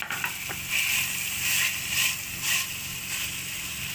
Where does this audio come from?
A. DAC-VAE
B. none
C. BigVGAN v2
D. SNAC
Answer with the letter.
B